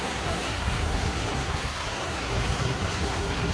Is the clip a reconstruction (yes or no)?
yes